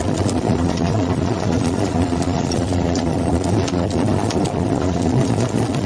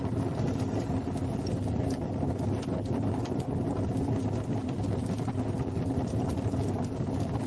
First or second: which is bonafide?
second